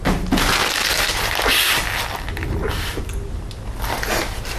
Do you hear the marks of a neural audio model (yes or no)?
no